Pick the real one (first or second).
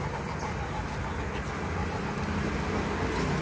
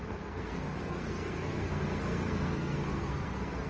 first